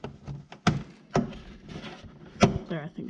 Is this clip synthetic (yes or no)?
no